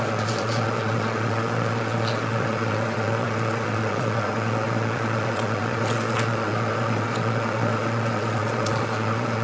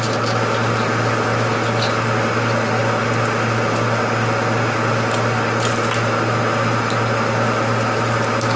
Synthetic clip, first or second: first